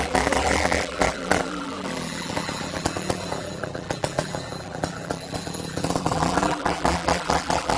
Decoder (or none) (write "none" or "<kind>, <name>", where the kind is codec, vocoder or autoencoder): vocoder, BigVGAN v2